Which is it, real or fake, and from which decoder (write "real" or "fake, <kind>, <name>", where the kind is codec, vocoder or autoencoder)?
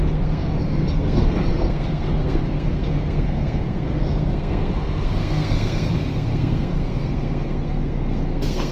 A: fake, codec, SNAC